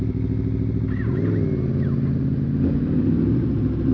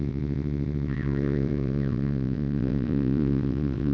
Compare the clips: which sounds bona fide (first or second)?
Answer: first